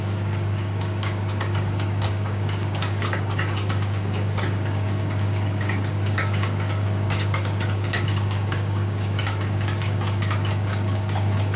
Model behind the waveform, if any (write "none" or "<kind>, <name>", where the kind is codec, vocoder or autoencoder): codec, DAC